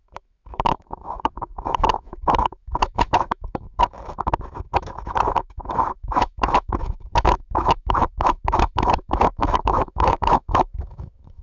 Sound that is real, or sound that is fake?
fake